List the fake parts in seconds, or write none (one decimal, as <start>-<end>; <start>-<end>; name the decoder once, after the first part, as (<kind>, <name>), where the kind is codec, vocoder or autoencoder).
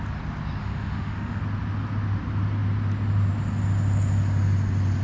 0.6-1.4 (autoencoder, DAC-VAE)